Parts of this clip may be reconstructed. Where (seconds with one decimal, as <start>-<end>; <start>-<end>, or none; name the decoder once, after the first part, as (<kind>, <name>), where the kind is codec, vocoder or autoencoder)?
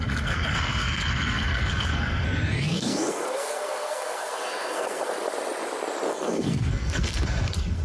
0.0-5.1 (codec, SNAC); 6.1-7.8